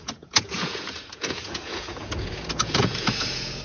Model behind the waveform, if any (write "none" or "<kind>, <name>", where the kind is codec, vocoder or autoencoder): vocoder, Vocos